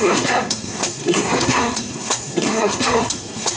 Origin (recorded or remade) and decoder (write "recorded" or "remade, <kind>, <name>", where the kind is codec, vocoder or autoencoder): remade, codec, SNAC